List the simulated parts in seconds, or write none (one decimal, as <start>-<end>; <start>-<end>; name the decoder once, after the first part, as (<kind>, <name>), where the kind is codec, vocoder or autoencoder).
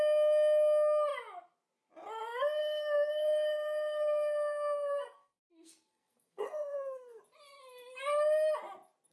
2.6-7.2 (codec, SNAC)